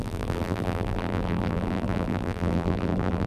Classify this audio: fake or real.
fake